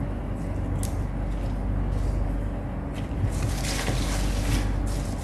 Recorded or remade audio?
recorded